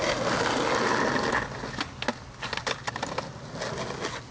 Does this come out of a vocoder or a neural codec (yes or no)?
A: no